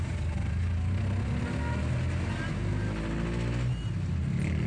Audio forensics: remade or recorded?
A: recorded